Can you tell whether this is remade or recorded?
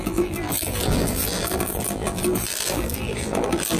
remade